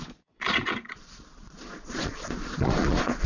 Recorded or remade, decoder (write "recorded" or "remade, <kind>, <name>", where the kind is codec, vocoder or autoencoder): remade, vocoder, Vocos